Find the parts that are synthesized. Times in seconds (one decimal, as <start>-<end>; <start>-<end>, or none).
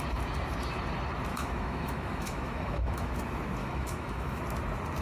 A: 1.3-3.1; 3.6-4.4